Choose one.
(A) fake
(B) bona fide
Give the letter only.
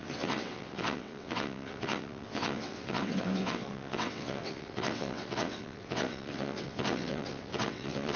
A